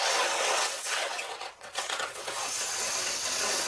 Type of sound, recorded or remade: remade